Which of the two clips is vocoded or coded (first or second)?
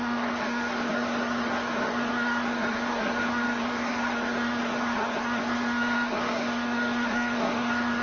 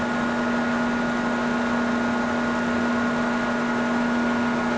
first